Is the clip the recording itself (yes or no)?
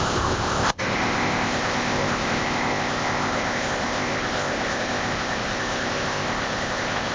no